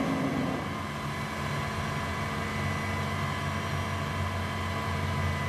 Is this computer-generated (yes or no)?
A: no